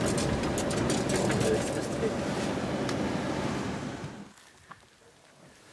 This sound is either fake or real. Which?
real